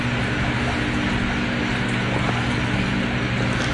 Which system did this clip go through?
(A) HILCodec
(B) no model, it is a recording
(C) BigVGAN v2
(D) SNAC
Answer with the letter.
B